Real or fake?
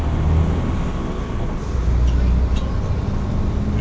real